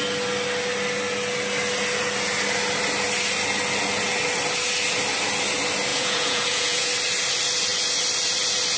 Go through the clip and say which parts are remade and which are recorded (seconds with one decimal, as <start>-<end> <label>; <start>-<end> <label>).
0.0-5.9 recorded; 5.9-6.9 remade; 6.9-8.8 recorded